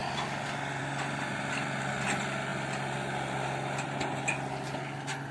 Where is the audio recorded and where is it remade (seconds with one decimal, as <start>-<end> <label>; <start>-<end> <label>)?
0.0-5.3 recorded